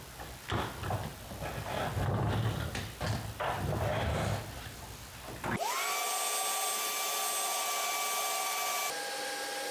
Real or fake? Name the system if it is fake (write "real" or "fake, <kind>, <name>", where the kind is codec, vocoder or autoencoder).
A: real